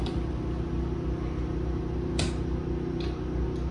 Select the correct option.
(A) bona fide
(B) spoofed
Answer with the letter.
A